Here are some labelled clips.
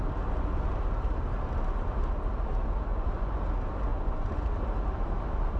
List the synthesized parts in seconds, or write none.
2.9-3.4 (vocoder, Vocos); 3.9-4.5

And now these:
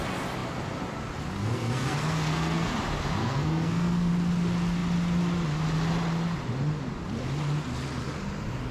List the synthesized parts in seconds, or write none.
1.4-2.7 (codec, SNAC); 3.2-4.1

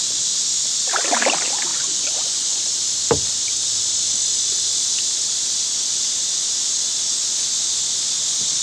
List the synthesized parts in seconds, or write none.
1.7-2.6 (vocoder, Vocos)

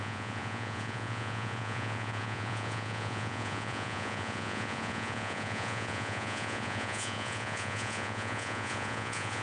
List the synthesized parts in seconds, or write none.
0.0-9.4 (vocoder, Vocos)

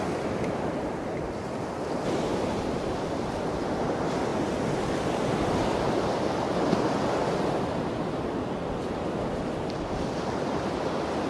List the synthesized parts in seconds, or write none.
2.3-3.0 (vocoder, BigVGAN v2)

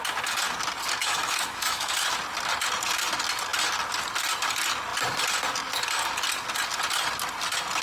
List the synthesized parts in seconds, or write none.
1.0-1.9 (autoencoder, DAC-VAE)

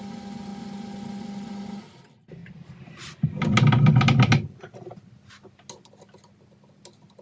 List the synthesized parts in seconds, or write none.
none